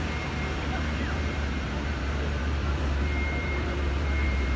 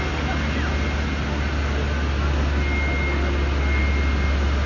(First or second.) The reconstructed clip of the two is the first